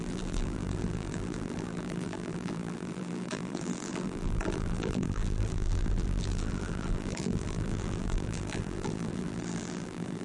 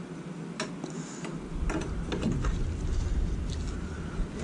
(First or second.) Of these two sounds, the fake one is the first